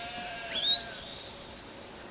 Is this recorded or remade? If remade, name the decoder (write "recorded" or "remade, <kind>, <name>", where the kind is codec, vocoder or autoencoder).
remade, vocoder, BigVGAN v2